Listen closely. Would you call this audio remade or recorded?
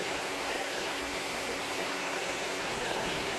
remade